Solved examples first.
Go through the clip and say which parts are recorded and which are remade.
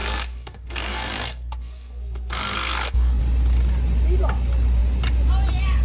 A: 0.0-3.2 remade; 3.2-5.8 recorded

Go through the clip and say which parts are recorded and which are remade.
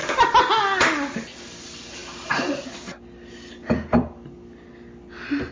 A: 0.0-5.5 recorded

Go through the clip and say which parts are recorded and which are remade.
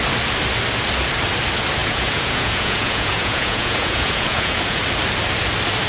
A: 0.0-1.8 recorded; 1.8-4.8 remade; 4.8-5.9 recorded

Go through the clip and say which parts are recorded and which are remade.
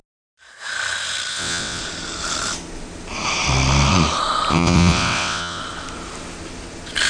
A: 0.0-1.3 recorded; 1.3-1.8 remade; 1.8-4.5 recorded; 4.5-5.6 remade; 5.6-7.1 recorded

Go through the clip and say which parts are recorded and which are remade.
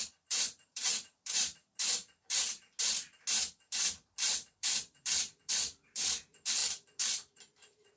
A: 0.0-2.5 remade; 2.5-3.5 recorded; 3.5-8.0 remade